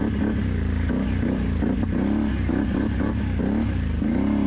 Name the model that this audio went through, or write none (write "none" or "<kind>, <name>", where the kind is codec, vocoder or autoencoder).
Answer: none